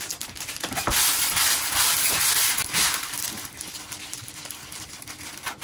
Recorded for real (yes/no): no